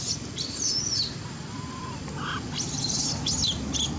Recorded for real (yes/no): yes